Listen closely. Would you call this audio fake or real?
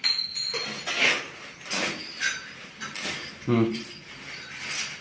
real